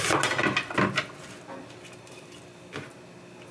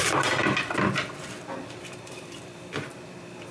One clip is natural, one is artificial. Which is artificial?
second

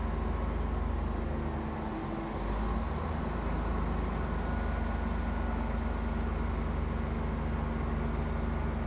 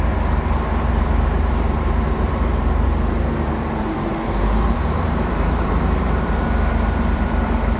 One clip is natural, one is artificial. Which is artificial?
second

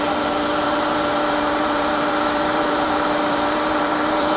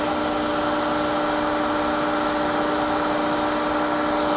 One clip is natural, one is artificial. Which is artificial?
first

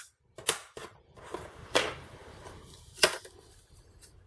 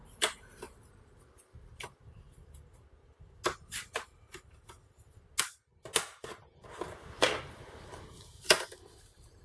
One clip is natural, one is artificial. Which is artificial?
first